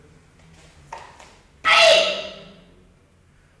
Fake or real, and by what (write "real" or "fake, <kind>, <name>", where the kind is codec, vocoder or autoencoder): real